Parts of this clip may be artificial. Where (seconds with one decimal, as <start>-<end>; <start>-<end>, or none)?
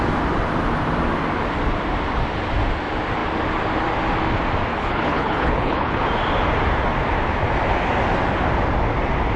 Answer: 4.7-6.0